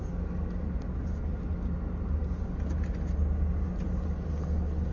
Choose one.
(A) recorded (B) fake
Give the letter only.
A